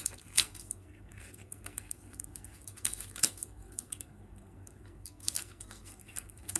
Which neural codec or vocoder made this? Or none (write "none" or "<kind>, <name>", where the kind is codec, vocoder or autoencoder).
codec, SNAC